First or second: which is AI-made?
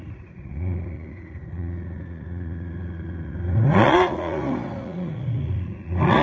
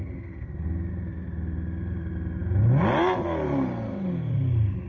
first